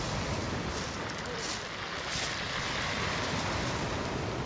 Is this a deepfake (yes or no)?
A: no